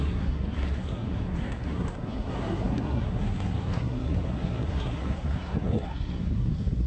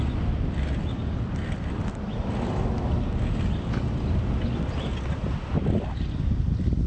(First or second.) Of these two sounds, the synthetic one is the first